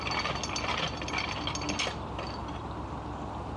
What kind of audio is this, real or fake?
real